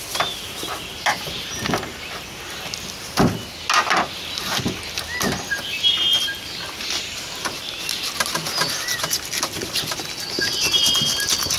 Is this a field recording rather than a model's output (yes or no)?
yes